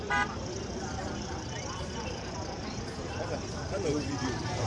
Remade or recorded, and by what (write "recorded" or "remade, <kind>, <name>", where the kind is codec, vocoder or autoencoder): remade, vocoder, BigVGAN v2